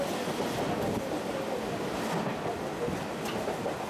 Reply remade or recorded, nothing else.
recorded